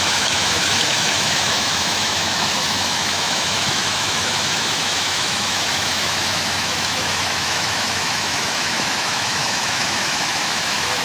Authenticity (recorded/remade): remade